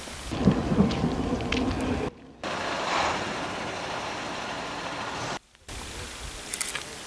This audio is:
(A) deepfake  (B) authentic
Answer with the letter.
B